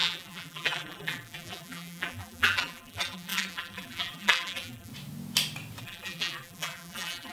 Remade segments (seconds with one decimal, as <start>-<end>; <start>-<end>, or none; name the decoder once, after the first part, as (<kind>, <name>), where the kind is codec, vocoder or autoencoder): 0.0-4.9 (vocoder, BigVGAN v2); 5.8-7.3